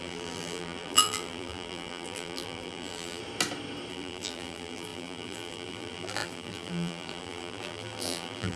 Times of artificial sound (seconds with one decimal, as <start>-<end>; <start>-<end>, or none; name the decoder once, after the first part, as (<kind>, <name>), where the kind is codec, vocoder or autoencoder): 0.0-3.2 (vocoder, BigVGAN v2); 3.9-8.6